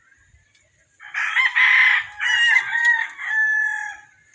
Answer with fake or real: real